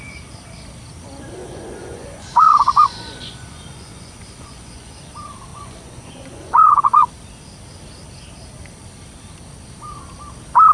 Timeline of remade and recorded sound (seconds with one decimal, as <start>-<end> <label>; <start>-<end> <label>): 0.0-1.4 recorded; 1.4-5.1 remade; 5.1-5.5 recorded; 5.5-7.1 remade; 7.1-10.7 recorded